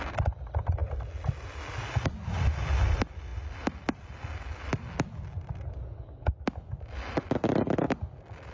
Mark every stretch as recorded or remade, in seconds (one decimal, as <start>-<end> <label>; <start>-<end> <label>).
0.0-8.5 recorded

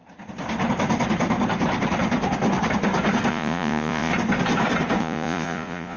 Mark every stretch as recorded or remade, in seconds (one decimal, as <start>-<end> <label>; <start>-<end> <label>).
0.0-3.3 recorded; 3.3-4.1 remade; 4.1-5.0 recorded; 5.0-6.0 remade

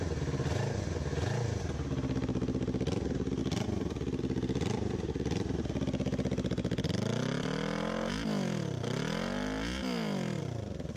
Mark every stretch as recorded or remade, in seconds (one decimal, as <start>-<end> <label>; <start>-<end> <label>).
0.0-11.0 recorded

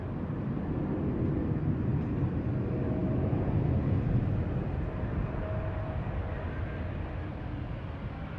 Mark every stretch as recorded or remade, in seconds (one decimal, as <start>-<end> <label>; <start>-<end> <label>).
0.0-8.4 recorded